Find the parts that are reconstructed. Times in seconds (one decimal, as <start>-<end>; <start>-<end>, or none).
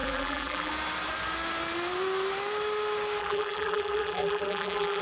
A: 0.0-0.7; 3.2-5.0